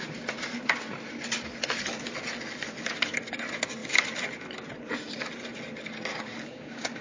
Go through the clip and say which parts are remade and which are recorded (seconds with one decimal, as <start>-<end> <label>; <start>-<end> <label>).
0.0-6.1 recorded; 6.1-7.0 remade